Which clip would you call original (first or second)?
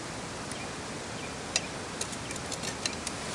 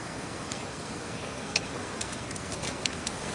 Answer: first